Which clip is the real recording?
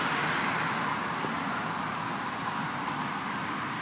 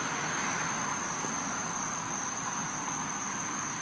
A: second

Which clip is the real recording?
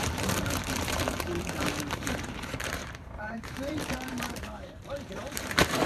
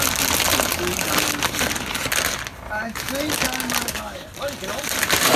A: second